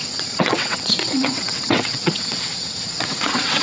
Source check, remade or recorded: remade